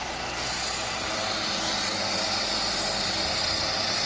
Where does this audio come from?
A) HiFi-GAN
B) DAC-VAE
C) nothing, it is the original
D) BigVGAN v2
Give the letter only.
C